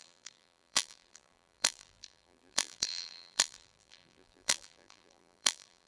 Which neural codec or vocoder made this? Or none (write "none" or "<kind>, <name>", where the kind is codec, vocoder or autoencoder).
vocoder, BigVGAN v2